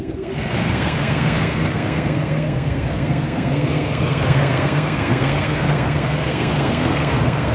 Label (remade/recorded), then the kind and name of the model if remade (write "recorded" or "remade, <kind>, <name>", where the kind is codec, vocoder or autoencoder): remade, codec, SNAC